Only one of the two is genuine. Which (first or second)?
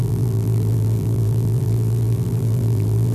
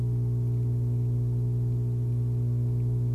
second